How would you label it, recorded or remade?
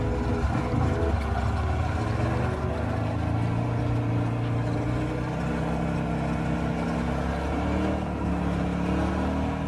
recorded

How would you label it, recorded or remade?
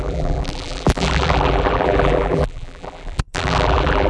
remade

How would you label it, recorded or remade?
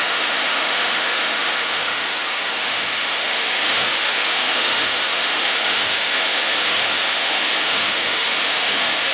remade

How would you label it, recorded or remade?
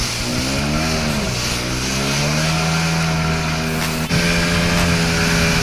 recorded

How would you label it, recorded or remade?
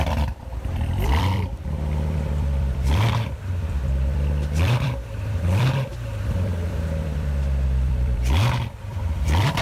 remade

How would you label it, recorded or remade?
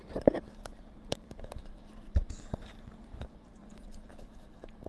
remade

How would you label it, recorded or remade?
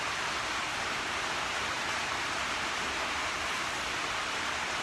recorded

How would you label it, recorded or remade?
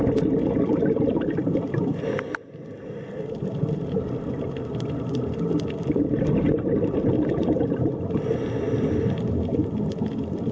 recorded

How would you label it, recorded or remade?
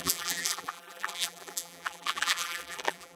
remade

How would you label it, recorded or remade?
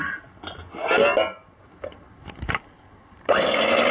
recorded